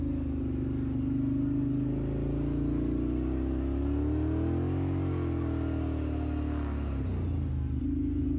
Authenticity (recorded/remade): recorded